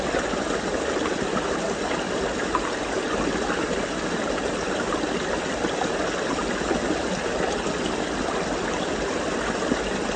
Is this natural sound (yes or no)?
yes